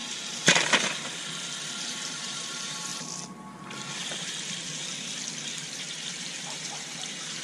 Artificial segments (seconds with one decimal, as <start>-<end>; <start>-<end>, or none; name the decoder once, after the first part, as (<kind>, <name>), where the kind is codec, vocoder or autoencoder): 1.8-2.9 (vocoder, BigVGAN v2); 5.8-7.4